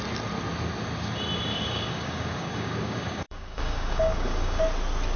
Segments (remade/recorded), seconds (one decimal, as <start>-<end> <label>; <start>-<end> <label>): 0.0-1.5 recorded; 1.5-4.6 remade; 4.6-5.2 recorded